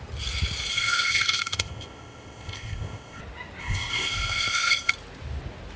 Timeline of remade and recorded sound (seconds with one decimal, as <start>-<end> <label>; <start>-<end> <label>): 0.0-0.7 recorded; 0.7-3.2 remade; 3.2-3.6 recorded; 3.6-4.9 remade; 4.9-5.8 recorded